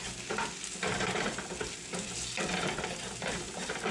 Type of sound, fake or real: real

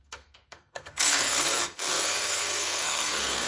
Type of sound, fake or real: fake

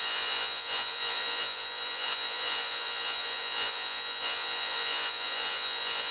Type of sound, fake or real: fake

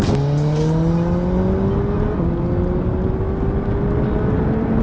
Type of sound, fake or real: real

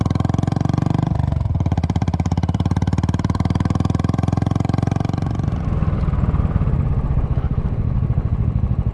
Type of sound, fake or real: fake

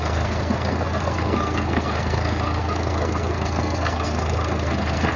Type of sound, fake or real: fake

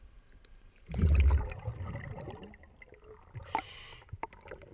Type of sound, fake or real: real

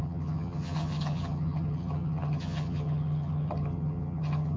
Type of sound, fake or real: fake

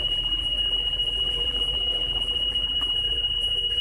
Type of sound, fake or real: fake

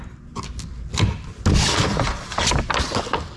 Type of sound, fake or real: real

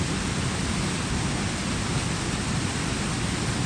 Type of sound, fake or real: real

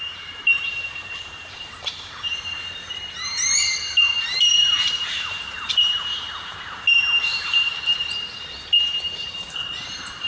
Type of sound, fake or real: fake